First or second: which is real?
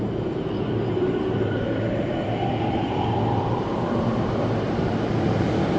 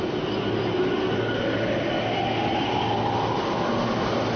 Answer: second